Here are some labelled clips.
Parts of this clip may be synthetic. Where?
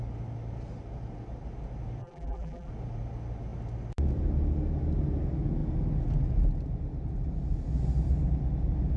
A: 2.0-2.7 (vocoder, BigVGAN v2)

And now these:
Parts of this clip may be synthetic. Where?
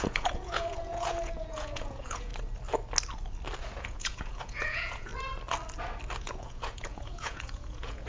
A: 0.0-2.3 (vocoder, Vocos); 3.8-5.1; 6.2-8.1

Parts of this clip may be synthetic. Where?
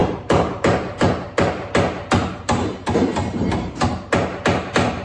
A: 0.0-1.1 (vocoder, BigVGAN v2); 2.2-3.7